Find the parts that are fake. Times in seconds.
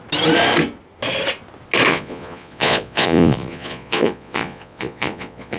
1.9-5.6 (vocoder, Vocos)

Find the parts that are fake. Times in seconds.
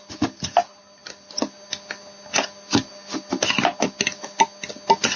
none